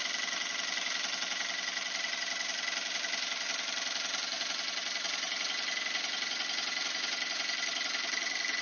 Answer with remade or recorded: recorded